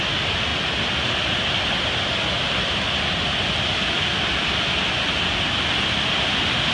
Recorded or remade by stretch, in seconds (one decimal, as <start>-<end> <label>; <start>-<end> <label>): 0.0-6.7 recorded